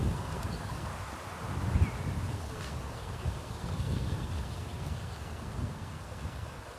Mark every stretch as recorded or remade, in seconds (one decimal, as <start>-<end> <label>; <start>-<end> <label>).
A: 0.0-0.9 remade; 0.9-2.3 recorded; 2.3-6.8 remade